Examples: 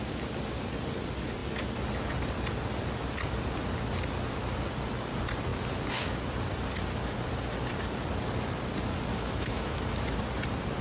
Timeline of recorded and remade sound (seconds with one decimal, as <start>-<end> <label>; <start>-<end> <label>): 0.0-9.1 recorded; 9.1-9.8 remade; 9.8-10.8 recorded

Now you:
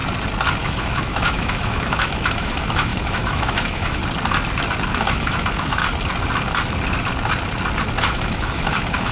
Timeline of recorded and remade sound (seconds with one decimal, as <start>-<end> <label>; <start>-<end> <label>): 0.0-0.6 recorded; 0.6-4.0 remade; 4.0-4.9 recorded; 4.9-5.8 remade; 5.8-8.0 recorded; 8.0-9.1 remade

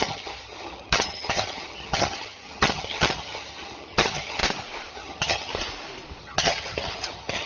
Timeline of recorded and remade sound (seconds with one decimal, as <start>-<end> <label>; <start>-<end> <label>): 0.0-4.4 remade; 4.4-4.9 recorded; 4.9-5.5 remade; 5.5-6.2 recorded; 6.2-7.5 remade

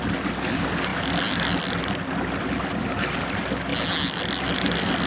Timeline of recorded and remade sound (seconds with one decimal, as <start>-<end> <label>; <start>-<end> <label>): 0.0-5.1 recorded